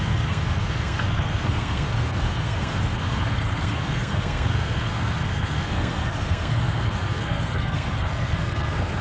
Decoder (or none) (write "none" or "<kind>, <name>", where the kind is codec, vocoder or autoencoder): codec, SNAC